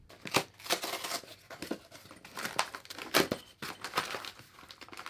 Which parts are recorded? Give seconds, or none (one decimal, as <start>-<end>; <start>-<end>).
0.0-5.1